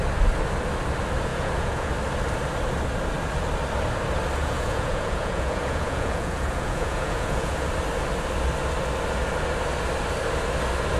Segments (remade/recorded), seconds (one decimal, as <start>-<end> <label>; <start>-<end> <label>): 0.0-1.3 recorded; 1.3-1.9 remade; 1.9-4.4 recorded; 4.4-7.7 remade; 7.7-11.0 recorded